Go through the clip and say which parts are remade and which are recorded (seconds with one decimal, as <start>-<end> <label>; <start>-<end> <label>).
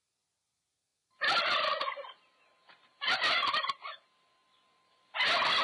0.0-5.6 recorded